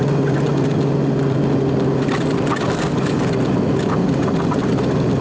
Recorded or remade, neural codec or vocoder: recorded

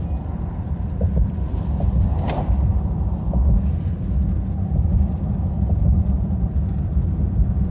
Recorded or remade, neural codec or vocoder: remade, vocoder, BigVGAN v2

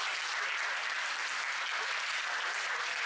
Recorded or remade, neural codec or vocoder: recorded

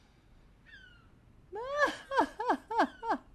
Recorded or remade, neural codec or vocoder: recorded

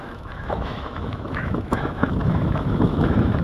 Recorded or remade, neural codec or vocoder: remade, autoencoder, DAC-VAE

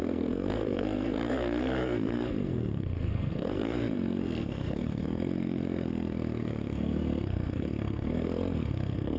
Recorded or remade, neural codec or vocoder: remade, codec, SNAC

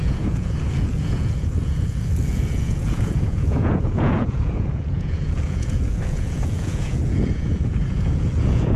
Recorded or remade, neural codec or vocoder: remade, vocoder, Vocos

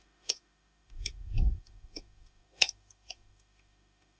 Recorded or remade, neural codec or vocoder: remade, autoencoder, DAC-VAE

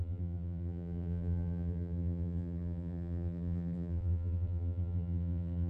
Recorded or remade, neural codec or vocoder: remade, vocoder, BigVGAN v2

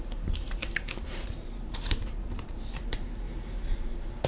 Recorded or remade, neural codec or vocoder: remade, vocoder, BigVGAN v2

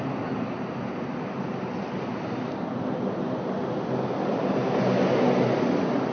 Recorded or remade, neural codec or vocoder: recorded